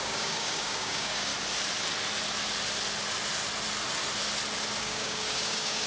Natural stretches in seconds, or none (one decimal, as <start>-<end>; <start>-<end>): 1.3-4.8